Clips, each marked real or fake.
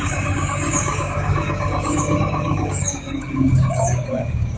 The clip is fake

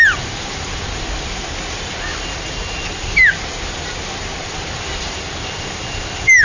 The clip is real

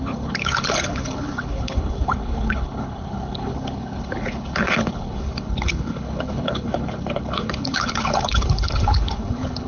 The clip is fake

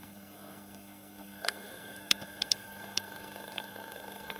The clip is fake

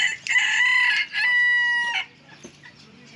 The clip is real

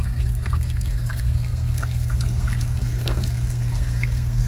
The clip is fake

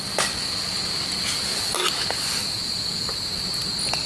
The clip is real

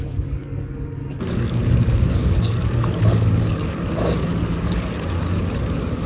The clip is fake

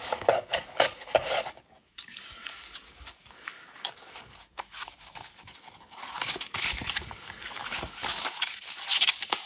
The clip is fake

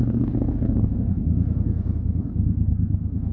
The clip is fake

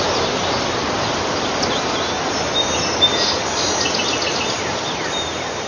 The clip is real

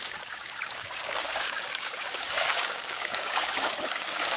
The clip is fake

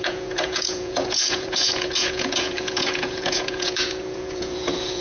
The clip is fake